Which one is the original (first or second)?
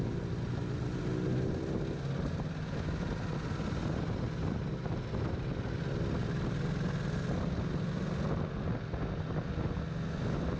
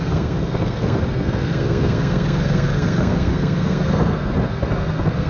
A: first